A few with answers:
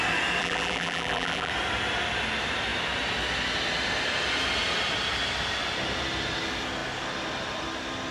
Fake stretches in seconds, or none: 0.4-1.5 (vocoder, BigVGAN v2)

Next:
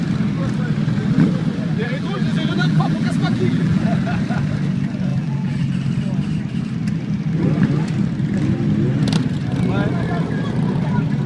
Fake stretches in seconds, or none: 1.8-3.8 (vocoder, BigVGAN v2); 5.1-5.7

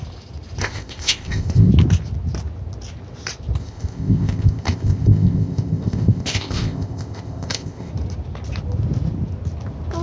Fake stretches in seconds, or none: 0.6-1.7 (codec, ZipCodec); 3.6-7.9

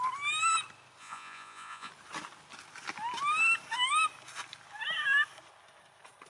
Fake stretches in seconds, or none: 1.0-1.9 (vocoder, Vocos)

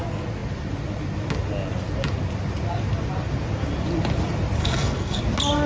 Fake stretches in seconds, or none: 4.6-5.2 (codec, SNAC)